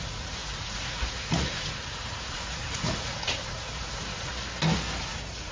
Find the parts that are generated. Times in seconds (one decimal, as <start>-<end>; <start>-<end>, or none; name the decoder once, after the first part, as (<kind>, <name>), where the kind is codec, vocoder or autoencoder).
0.0-4.3 (vocoder, Vocos); 5.0-5.5